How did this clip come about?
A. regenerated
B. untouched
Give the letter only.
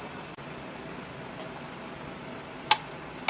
B